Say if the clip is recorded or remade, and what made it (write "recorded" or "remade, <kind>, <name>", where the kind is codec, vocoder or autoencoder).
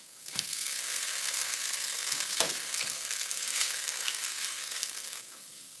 remade, codec, SNAC